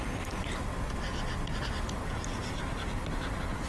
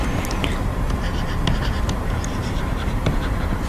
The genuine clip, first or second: first